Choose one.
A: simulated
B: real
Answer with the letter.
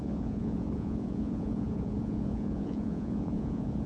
A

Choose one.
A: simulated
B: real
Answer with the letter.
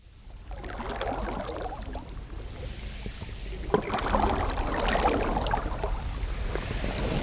B